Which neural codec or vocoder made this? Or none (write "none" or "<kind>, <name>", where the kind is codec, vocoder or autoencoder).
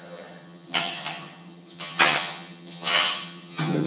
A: vocoder, HiFi-GAN